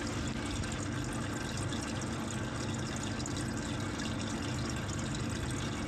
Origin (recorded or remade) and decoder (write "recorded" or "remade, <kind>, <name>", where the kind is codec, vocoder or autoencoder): recorded